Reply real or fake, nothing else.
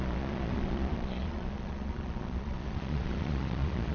fake